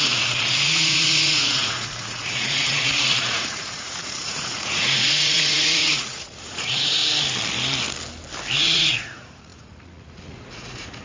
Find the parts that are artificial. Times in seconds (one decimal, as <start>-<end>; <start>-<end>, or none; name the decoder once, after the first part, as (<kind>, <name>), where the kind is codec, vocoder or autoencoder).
0.0-7.0 (vocoder, Vocos); 8.6-11.0